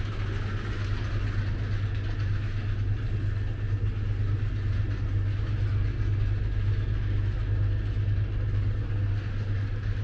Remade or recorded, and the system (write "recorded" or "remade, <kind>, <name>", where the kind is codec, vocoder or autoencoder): recorded